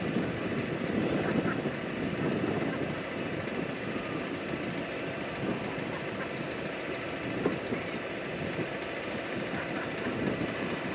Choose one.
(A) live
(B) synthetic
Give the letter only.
A